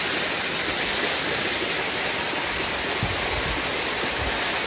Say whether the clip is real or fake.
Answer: real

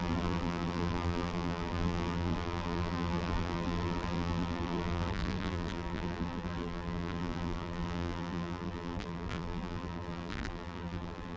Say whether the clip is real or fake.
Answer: fake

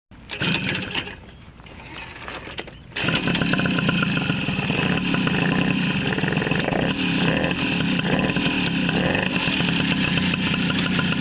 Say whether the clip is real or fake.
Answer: real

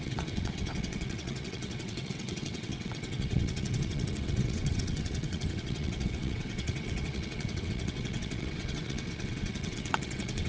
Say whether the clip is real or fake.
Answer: fake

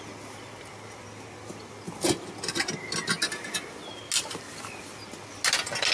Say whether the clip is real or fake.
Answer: real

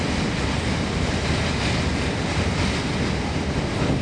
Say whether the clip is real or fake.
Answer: real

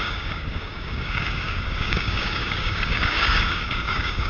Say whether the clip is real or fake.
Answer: fake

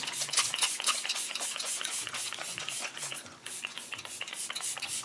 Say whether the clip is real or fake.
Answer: fake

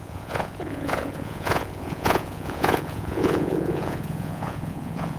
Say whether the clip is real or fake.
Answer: fake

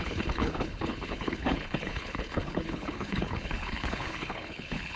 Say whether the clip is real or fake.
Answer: fake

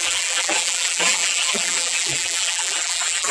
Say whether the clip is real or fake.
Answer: fake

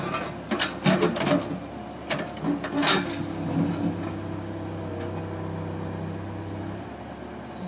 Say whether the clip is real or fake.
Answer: real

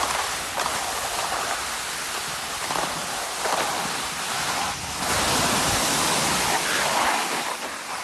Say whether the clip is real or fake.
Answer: real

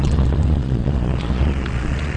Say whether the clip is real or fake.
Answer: fake